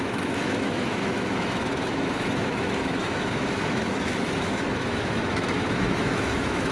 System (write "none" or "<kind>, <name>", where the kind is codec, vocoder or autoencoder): autoencoder, DAC-VAE